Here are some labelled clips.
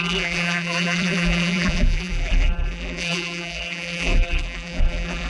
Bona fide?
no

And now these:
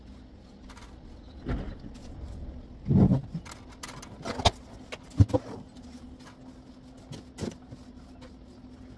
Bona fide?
yes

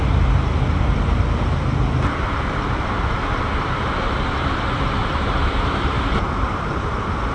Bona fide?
no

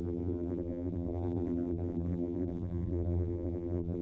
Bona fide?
no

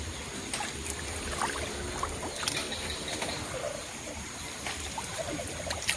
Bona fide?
yes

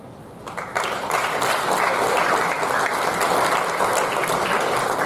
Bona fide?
yes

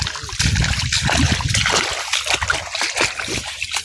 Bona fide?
yes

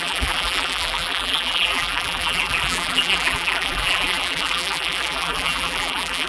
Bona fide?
no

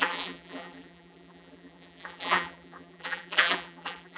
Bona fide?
no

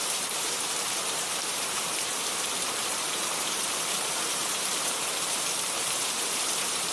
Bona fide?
no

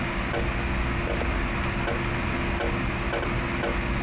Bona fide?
yes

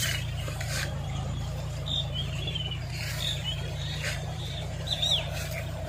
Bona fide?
no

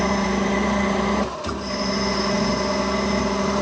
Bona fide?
no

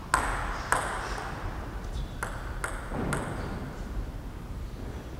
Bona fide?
yes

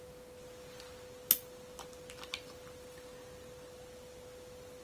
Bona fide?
yes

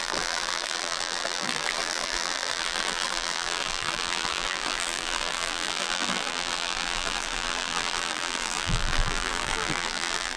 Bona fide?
no